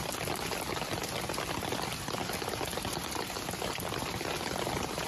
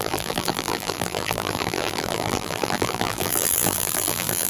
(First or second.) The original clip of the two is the first